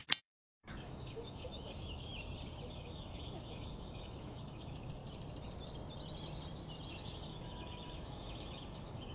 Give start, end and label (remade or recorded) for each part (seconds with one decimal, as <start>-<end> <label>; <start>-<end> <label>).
0.0-2.1 remade; 2.1-2.7 recorded; 2.7-5.0 remade; 5.0-6.9 recorded; 6.9-9.1 remade